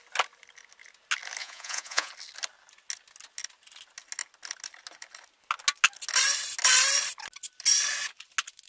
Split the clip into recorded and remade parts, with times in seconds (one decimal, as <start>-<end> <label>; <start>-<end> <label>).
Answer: 0.0-1.4 recorded; 1.4-2.1 remade; 2.1-8.7 recorded